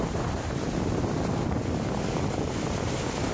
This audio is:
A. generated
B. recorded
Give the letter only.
B